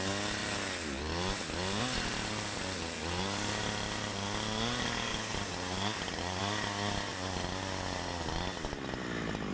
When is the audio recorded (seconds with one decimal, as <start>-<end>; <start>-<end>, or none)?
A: 0.0-5.1; 6.4-7.1; 8.3-9.5